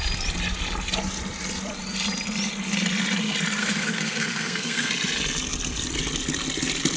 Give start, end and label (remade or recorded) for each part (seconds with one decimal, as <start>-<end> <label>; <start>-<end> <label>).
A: 0.0-3.6 recorded; 3.6-4.9 remade; 4.9-7.0 recorded